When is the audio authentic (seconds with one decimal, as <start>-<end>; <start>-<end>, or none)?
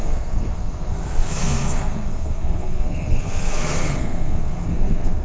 none